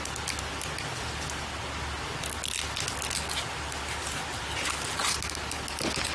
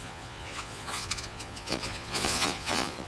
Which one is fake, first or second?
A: second